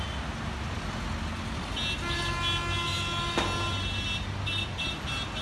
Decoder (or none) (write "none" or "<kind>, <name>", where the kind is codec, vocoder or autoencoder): none